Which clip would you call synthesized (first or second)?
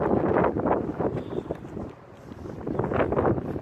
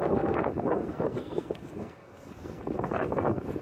second